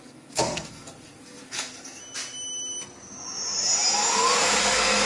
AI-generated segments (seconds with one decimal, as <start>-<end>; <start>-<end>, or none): 0.0-2.0; 4.6-5.1